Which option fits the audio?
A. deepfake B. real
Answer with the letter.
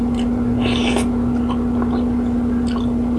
B